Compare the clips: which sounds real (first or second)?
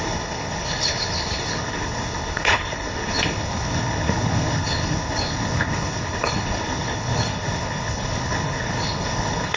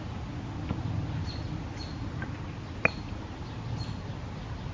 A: second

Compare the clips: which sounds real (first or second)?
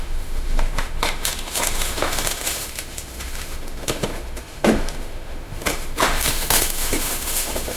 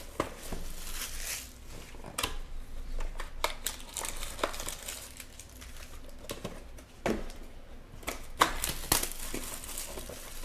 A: second